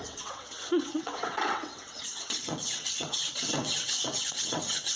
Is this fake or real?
fake